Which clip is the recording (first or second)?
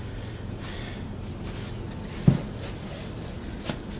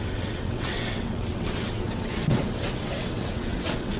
first